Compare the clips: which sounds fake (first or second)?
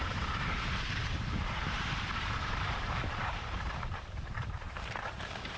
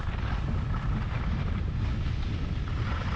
first